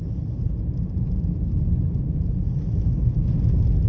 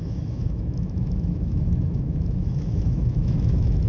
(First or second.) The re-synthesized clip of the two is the second